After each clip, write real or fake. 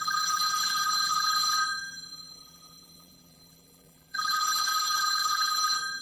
fake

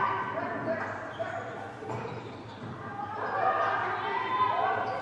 real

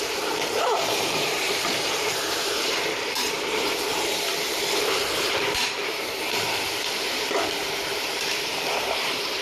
fake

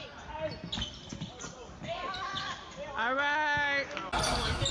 real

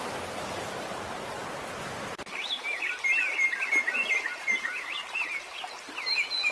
real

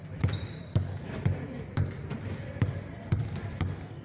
fake